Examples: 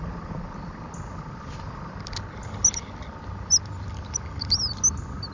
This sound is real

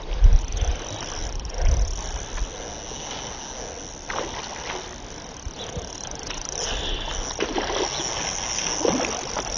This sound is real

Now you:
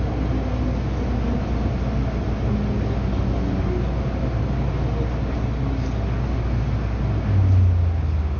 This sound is real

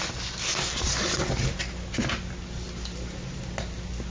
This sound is real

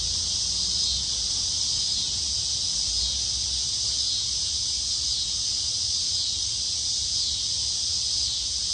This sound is real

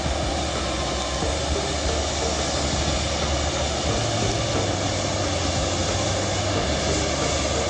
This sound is real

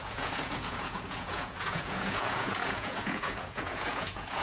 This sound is fake